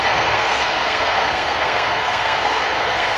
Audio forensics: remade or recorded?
remade